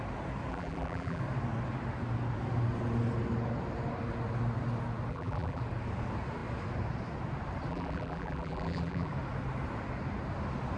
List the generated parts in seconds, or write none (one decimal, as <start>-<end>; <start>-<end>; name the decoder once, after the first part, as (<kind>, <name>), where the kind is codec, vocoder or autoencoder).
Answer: 0.5-1.2 (vocoder, BigVGAN v2); 5.1-5.6; 7.7-9.1